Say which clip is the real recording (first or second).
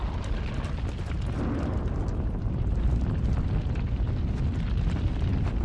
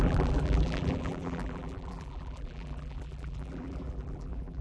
first